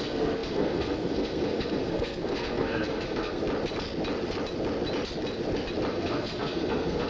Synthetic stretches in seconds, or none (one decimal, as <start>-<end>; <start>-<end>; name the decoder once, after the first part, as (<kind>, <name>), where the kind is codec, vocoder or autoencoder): 0.0-3.4 (codec, SNAC); 5.9-7.1